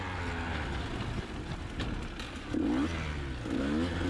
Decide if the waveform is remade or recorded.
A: recorded